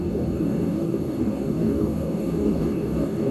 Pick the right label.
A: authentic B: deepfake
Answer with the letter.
B